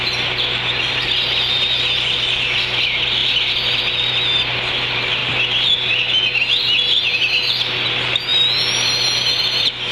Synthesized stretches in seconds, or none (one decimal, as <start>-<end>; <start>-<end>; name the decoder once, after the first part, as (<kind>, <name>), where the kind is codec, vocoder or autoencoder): none